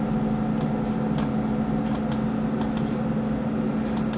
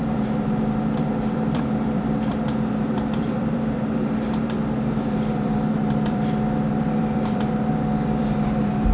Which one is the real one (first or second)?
first